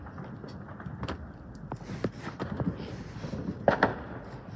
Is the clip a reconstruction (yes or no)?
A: no